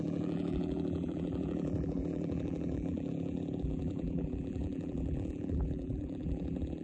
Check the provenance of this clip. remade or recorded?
remade